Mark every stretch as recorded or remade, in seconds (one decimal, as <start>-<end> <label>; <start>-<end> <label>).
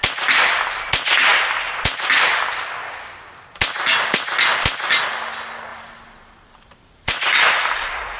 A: 0.0-5.7 recorded; 5.7-8.2 remade